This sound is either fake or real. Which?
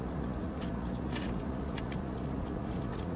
fake